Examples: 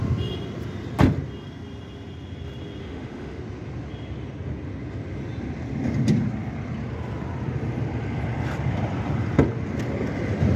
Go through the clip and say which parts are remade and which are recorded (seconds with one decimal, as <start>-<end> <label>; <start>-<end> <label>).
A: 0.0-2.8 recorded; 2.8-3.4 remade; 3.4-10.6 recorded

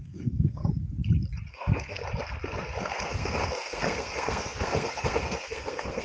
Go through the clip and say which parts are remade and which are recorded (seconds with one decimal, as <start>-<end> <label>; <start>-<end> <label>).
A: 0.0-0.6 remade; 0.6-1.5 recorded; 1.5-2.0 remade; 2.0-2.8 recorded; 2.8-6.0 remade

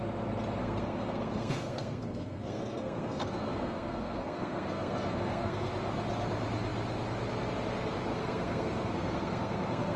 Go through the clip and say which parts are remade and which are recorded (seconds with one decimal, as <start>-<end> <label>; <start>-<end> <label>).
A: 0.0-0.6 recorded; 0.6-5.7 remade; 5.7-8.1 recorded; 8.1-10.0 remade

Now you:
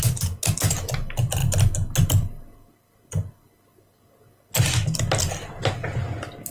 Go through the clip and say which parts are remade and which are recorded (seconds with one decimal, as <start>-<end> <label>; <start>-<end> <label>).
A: 0.0-6.5 recorded